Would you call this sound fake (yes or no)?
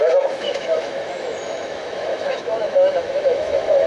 yes